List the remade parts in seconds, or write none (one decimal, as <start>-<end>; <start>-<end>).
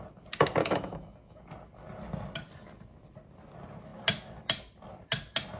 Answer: 0.6-1.4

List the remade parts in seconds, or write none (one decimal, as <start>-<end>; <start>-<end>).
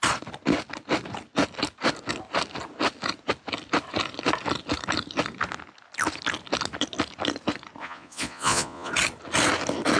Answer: 7.8-8.9